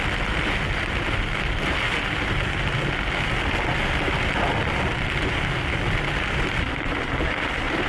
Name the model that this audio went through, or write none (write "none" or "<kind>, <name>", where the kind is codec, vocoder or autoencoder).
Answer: none